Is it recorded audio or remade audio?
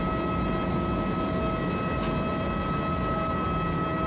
recorded